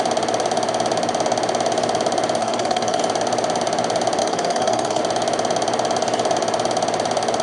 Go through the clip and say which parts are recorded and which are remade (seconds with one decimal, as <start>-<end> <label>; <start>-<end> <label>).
0.0-2.4 recorded; 2.4-3.0 remade; 3.0-4.2 recorded; 4.2-5.0 remade; 5.0-7.4 recorded